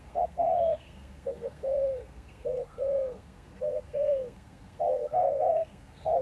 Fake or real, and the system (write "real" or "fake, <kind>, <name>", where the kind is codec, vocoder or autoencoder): fake, codec, SNAC